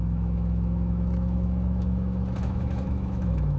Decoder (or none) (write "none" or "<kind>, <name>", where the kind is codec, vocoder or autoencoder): autoencoder, DAC-VAE